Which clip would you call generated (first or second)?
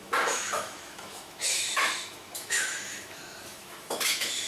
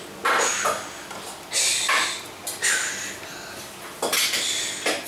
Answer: first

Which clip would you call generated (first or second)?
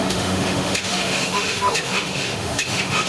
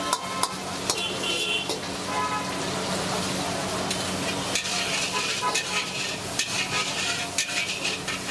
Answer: first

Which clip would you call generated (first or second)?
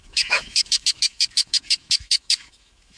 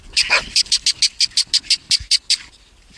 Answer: first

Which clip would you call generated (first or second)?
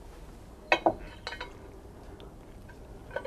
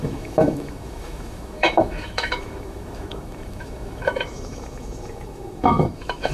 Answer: second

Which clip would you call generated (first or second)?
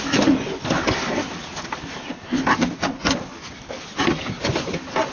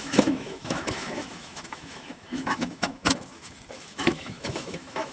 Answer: second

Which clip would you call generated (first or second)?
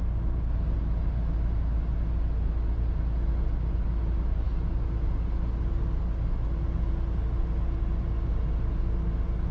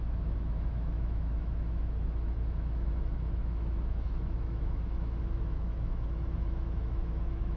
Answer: second